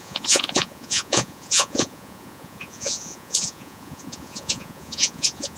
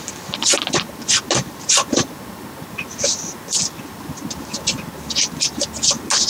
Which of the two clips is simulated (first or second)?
first